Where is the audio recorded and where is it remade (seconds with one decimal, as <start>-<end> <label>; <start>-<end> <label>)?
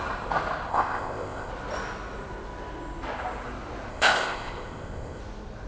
0.0-0.7 recorded; 0.7-1.5 remade; 1.5-3.9 recorded; 3.9-5.2 remade; 5.2-5.7 recorded